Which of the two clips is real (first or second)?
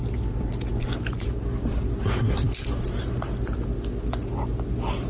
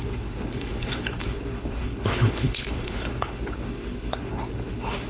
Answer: first